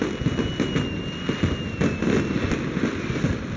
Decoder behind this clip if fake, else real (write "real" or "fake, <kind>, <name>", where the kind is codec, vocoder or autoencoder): real